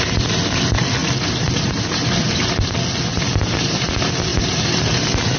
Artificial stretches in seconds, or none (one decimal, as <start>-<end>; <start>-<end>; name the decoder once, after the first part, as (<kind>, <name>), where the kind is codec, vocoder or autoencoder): 1.0-1.9 (vocoder, BigVGAN v2); 3.1-3.9; 4.3-5.0